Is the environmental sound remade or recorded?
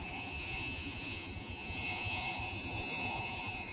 remade